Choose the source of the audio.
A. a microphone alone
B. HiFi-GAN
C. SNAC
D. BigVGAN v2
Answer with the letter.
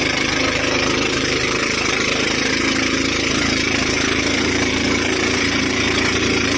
D